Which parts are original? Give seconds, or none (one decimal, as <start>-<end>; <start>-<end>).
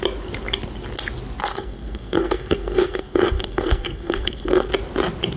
0.0-1.5; 4.7-5.4